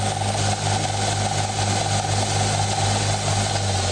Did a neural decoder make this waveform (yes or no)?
no